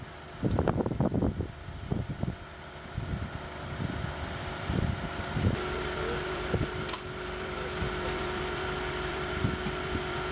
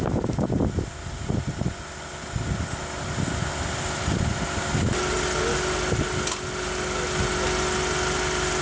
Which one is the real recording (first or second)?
second